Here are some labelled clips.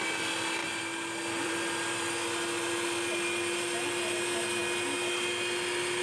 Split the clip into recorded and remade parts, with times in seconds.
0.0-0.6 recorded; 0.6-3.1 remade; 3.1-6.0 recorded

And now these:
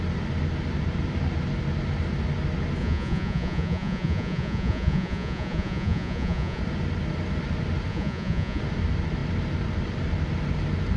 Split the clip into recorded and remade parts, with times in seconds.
0.0-2.8 recorded; 2.8-6.6 remade; 6.6-7.9 recorded; 7.9-8.6 remade; 8.6-11.0 recorded

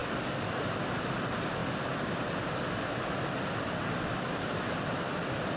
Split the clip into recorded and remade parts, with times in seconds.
0.0-0.6 remade; 0.6-5.6 recorded

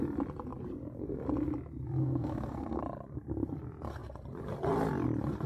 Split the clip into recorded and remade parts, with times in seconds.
0.0-2.0 recorded; 2.0-2.8 remade; 2.8-5.5 recorded

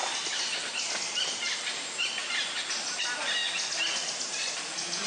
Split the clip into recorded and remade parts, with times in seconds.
0.0-5.1 recorded